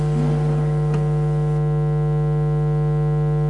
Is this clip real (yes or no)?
yes